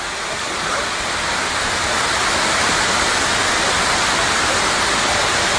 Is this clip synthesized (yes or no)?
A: no